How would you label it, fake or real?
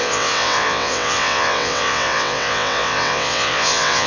fake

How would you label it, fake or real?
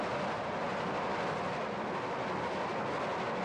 real